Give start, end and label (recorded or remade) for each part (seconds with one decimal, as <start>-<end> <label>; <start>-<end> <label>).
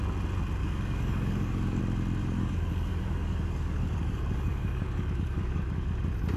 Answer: 0.0-0.6 recorded; 0.6-1.8 remade; 1.8-2.2 recorded; 2.2-6.0 remade; 6.0-6.4 recorded